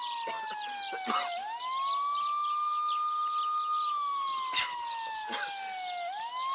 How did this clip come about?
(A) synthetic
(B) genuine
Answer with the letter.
B